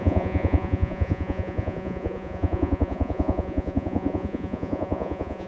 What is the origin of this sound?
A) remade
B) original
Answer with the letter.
A